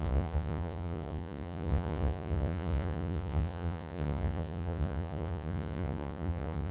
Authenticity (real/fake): fake